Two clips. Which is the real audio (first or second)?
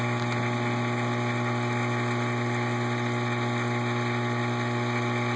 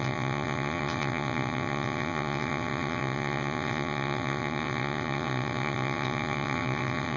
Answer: first